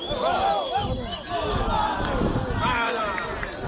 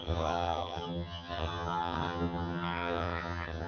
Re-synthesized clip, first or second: second